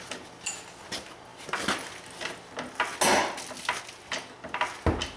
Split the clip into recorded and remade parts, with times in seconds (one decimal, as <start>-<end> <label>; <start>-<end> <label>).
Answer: 0.0-5.2 recorded